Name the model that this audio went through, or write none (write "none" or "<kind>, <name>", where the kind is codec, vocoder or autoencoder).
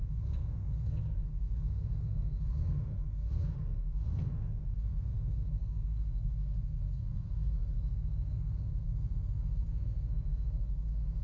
codec, SNAC